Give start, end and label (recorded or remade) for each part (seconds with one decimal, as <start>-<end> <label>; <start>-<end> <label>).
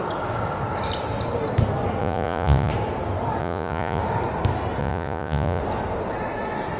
0.0-2.0 recorded; 2.0-2.7 remade; 2.7-3.4 recorded; 3.4-4.0 remade; 4.0-4.8 recorded; 4.8-5.6 remade; 5.6-6.8 recorded